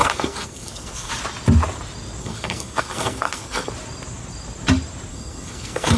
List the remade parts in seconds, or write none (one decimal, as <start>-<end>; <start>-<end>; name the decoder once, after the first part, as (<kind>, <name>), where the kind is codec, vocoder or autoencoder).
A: 0.0-1.1 (codec, SNAC); 2.2-3.7; 5.1-6.0